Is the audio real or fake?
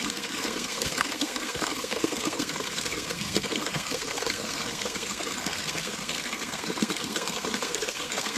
fake